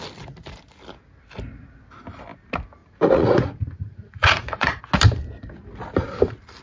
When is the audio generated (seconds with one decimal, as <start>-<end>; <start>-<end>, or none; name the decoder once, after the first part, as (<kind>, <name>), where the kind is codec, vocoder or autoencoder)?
2.8-4.8 (vocoder, Vocos)